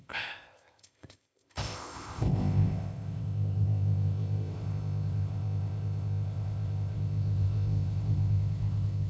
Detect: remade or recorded remade